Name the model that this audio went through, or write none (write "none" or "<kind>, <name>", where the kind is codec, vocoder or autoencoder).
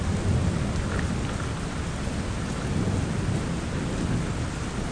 none